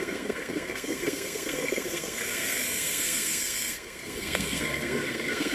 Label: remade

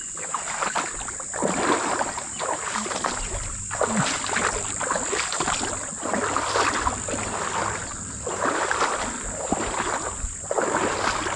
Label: recorded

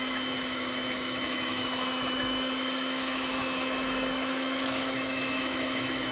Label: remade